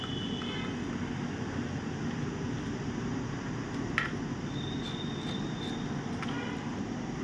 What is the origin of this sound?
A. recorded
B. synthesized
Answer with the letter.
A